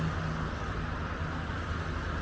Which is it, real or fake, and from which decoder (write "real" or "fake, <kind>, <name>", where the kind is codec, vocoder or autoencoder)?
real